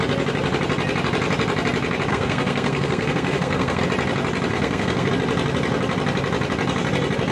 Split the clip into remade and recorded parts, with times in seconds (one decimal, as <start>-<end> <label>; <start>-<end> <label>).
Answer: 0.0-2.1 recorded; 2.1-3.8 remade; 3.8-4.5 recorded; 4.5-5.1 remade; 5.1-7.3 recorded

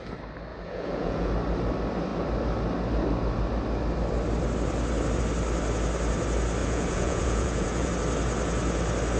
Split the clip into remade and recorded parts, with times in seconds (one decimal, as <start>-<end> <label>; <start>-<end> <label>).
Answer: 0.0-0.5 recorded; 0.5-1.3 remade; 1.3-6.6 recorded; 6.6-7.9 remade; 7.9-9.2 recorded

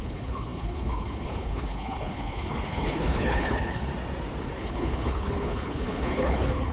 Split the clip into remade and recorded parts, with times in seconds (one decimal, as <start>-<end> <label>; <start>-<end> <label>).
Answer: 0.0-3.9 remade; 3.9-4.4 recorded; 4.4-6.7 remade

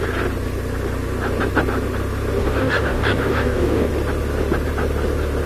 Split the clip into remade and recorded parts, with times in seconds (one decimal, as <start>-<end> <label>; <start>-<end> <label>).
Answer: 0.0-2.4 recorded; 2.4-3.9 remade; 3.9-5.5 recorded

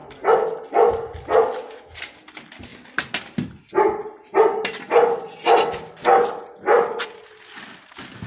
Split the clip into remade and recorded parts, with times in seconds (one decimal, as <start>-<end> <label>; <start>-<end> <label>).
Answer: 0.0-8.3 recorded

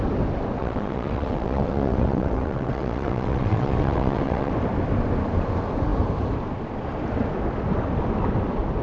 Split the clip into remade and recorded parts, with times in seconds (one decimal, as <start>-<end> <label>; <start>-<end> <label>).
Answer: 0.0-0.6 recorded; 0.6-4.5 remade; 4.5-8.8 recorded

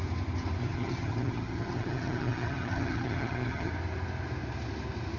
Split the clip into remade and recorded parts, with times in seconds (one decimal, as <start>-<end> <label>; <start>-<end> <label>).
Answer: 0.0-0.6 recorded; 0.6-3.7 remade; 3.7-5.2 recorded